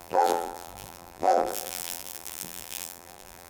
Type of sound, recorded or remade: remade